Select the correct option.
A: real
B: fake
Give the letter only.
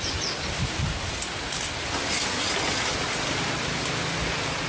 A